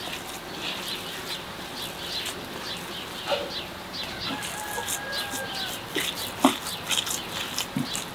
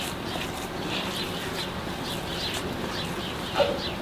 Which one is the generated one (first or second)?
second